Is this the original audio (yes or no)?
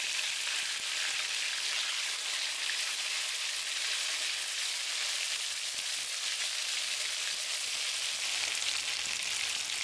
yes